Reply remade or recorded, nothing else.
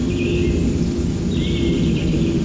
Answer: recorded